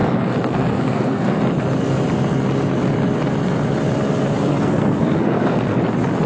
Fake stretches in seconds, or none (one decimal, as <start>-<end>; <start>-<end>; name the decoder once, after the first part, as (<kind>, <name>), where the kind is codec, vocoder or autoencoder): 0.0-1.4 (codec, SNAC); 4.5-5.8